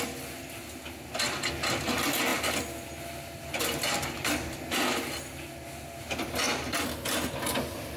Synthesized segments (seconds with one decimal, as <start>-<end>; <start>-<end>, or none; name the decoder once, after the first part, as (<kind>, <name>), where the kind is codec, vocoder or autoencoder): none